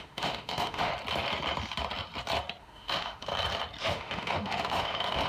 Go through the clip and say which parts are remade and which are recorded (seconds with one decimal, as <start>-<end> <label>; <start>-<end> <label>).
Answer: 0.0-0.9 remade; 0.9-2.6 recorded; 2.6-3.3 remade; 3.3-3.8 recorded; 3.8-5.3 remade